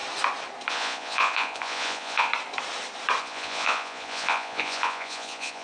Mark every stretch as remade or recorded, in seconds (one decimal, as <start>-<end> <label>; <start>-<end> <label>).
0.0-0.7 recorded; 0.7-2.3 remade; 2.3-3.2 recorded; 3.2-5.6 remade